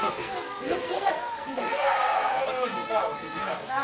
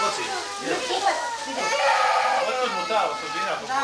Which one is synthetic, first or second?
first